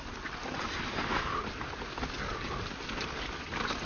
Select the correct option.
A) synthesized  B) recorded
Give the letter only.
B